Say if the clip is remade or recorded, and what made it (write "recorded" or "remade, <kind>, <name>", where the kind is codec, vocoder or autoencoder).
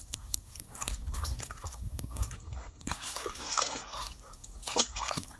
remade, codec, SNAC